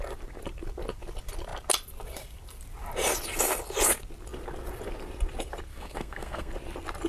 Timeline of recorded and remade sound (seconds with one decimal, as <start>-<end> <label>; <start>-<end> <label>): 0.0-5.7 recorded; 5.7-6.5 remade; 6.5-7.1 recorded